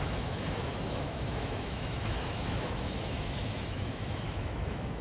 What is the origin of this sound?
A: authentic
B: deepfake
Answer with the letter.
B